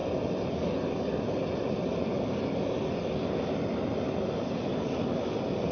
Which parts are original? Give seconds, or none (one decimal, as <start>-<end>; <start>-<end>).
0.0-3.9; 4.6-5.7

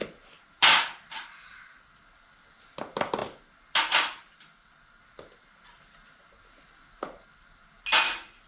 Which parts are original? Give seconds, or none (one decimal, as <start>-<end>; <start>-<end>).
0.0-8.5

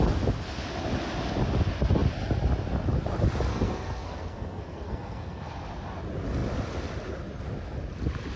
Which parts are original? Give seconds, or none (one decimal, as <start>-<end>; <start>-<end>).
0.0-3.5; 5.5-8.4

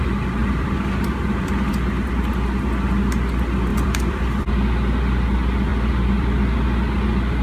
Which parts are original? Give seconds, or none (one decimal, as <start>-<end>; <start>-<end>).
0.0-0.4; 1.7-3.7; 4.5-5.7; 6.4-7.4